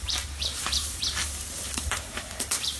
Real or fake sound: fake